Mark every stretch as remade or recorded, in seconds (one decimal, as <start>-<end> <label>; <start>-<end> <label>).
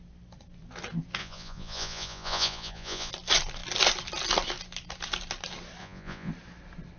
0.0-1.2 recorded; 1.2-3.1 remade; 3.1-5.8 recorded; 5.8-6.3 remade; 6.3-7.0 recorded